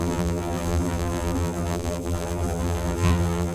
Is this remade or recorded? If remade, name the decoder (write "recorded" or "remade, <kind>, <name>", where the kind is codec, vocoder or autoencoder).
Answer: remade, vocoder, BigVGAN v2